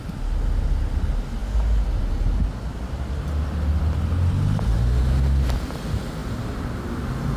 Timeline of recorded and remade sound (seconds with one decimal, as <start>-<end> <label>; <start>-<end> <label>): 0.0-7.4 recorded